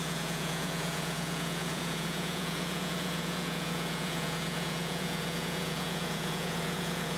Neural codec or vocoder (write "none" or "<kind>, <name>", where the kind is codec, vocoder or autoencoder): vocoder, Vocos